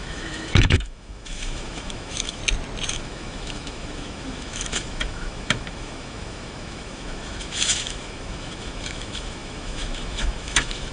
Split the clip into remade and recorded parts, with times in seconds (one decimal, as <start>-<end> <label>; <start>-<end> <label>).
0.0-2.4 remade; 2.4-2.9 recorded; 2.9-10.9 remade